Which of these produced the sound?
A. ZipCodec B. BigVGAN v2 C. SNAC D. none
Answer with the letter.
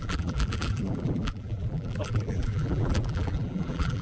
B